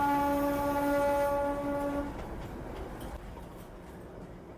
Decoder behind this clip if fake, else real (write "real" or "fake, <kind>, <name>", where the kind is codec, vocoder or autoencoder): real